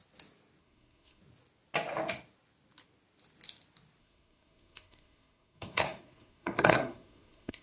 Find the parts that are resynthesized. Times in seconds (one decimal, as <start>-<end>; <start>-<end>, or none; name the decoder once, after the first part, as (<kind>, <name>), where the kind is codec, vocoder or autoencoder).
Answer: 0.6-1.2 (codec, SNAC); 4.0-7.6